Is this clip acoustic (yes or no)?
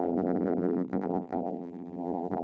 no